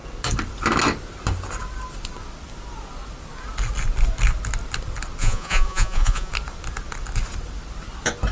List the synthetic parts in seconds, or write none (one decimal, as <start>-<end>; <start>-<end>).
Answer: 5.2-6.3